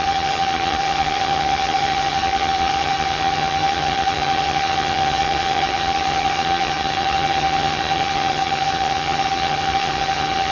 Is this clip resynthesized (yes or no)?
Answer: yes